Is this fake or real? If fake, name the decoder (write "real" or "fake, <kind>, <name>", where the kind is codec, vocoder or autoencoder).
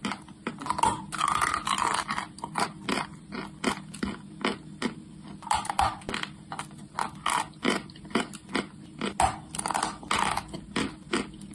real